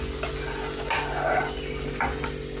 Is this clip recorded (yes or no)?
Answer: yes